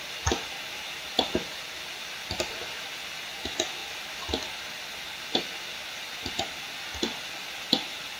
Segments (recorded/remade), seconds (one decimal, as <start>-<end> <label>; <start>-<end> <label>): 0.0-8.2 recorded